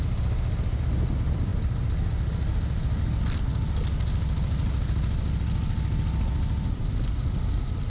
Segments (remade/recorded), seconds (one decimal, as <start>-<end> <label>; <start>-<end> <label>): 0.0-7.9 recorded